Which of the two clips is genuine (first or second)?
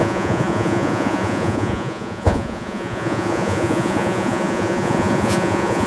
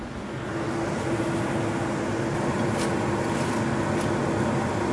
second